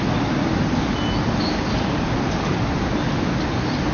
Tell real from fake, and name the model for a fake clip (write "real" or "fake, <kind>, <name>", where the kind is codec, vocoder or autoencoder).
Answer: real